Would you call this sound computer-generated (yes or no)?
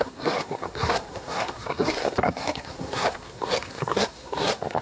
yes